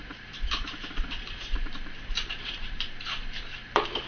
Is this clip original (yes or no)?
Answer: no